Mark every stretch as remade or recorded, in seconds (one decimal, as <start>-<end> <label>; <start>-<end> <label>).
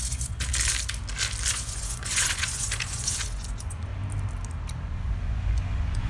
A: 0.0-0.5 remade; 0.5-1.5 recorded; 1.5-3.9 remade; 3.9-4.8 recorded; 4.8-6.1 remade